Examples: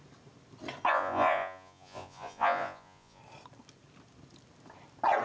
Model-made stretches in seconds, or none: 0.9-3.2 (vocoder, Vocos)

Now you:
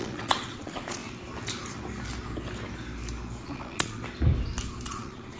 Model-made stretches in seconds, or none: 0.0-1.0 (vocoder, Vocos); 3.4-4.0; 4.9-5.4

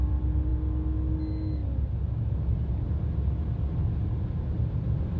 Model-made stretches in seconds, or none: none

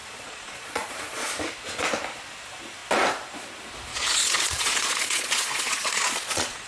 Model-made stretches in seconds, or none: 0.0-1.3 (vocoder, Vocos); 3.9-6.7

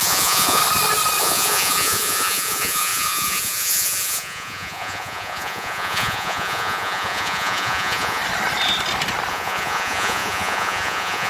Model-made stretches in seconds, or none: 0.0-0.6 (vocoder, Vocos); 1.2-8.2; 9.3-11.3

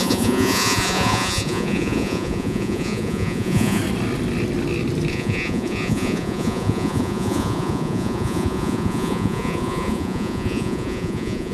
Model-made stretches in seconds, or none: 0.0-3.8 (vocoder, Vocos); 5.1-11.5

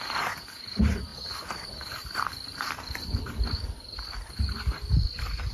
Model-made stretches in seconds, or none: none